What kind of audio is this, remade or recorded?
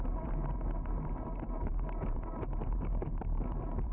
remade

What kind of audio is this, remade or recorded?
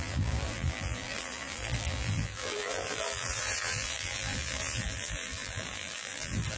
remade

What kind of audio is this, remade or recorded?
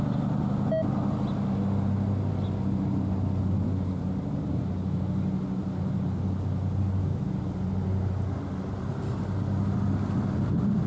recorded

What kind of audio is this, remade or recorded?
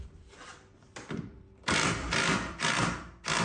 remade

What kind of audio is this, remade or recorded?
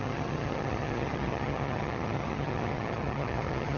remade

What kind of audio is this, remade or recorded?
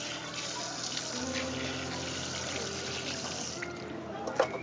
recorded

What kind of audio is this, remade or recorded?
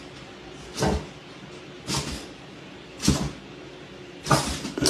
recorded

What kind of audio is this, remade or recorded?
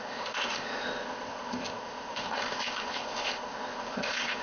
remade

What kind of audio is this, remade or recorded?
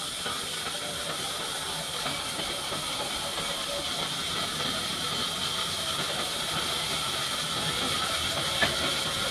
recorded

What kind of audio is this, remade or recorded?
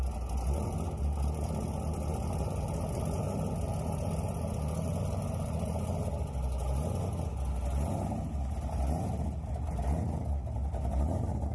recorded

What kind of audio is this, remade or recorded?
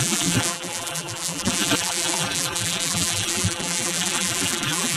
remade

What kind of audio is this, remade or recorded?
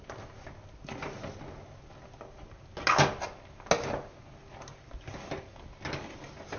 recorded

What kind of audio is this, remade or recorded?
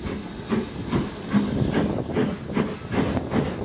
recorded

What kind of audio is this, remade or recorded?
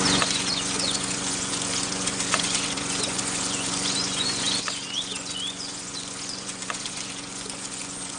remade